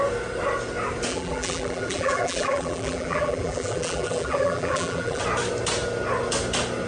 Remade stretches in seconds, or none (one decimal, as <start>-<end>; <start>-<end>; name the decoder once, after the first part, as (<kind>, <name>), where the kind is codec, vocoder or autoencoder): 1.1-5.2 (vocoder, BigVGAN v2)